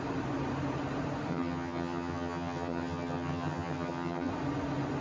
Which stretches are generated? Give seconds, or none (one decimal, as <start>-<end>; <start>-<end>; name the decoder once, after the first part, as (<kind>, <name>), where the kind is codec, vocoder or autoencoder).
1.3-4.3 (vocoder, HiFi-GAN)